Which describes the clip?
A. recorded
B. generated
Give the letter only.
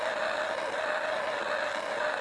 A